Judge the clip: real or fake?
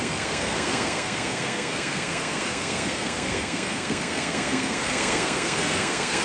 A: fake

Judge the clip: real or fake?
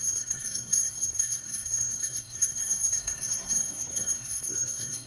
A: fake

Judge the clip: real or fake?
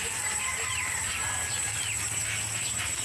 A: real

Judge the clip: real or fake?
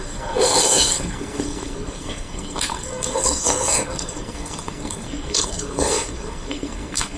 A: fake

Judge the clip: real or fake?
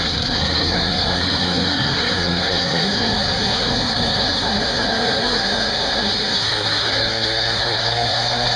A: fake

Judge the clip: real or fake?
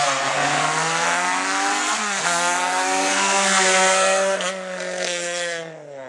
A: fake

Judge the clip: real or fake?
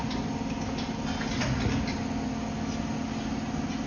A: real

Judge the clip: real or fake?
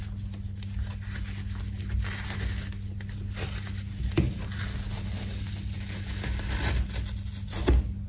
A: real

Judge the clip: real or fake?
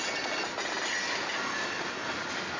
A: real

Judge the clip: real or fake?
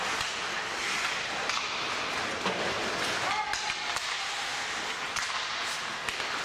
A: real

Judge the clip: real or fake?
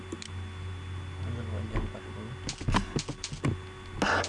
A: real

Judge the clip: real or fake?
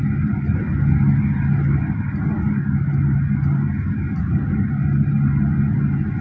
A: real